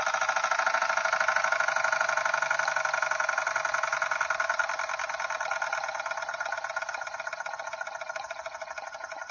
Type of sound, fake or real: real